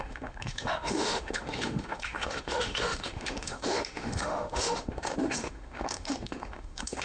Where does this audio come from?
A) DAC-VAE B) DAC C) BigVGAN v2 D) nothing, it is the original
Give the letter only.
A